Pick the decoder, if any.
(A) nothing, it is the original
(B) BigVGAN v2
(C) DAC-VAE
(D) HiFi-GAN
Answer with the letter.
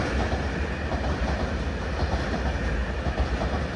A